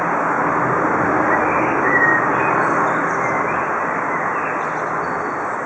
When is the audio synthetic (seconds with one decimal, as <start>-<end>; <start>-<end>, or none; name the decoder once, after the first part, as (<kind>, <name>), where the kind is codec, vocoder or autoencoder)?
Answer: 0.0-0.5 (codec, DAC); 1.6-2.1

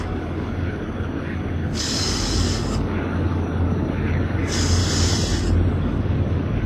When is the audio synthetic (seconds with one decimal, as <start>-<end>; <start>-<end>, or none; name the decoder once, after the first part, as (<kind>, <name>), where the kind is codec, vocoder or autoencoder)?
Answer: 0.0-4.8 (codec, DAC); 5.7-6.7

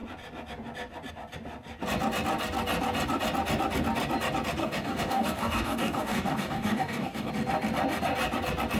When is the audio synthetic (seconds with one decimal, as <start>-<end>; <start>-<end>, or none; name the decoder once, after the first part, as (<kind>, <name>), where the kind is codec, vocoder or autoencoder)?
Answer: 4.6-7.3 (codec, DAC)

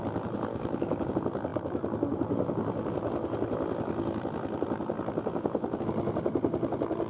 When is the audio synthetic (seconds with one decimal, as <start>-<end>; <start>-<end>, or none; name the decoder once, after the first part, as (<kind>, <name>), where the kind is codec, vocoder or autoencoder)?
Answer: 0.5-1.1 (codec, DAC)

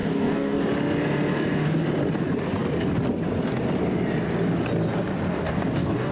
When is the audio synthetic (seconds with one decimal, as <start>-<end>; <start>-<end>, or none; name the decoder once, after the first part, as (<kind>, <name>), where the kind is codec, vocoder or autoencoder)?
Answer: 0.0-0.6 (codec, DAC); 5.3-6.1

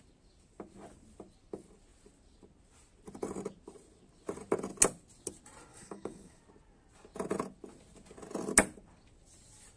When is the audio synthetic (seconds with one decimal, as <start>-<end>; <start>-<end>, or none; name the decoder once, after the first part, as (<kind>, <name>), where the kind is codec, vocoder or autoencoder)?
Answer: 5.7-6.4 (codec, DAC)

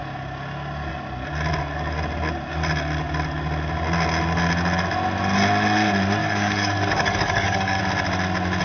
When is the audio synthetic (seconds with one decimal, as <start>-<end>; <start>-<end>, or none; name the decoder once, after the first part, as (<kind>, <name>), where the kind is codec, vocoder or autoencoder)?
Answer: 6.2-7.8 (codec, DAC)